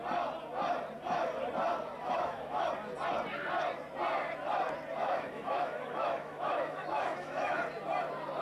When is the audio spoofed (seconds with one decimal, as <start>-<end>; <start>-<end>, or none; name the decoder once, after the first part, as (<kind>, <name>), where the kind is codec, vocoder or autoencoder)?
2.0-2.7 (autoencoder, DAC-VAE); 5.0-7.6